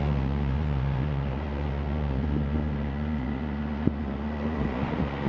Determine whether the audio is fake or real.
fake